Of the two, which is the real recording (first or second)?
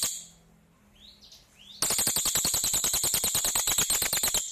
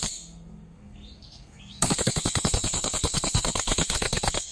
first